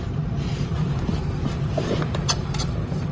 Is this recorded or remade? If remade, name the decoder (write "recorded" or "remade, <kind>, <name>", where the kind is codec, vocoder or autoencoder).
remade, vocoder, BigVGAN v2